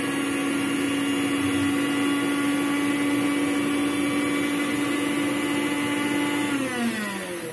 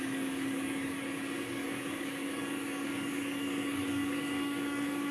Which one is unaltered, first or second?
first